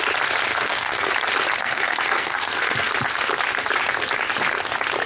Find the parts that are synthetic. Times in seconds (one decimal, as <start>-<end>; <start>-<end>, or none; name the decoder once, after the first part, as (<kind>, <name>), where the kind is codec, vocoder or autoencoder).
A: 0.5-1.1 (codec, SNAC); 1.6-2.9